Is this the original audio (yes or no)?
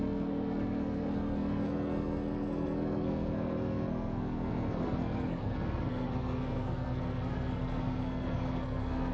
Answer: no